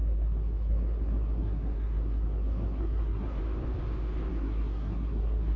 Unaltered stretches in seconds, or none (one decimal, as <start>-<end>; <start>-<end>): 3.4-4.3